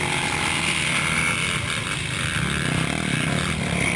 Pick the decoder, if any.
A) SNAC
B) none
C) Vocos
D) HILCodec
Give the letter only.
B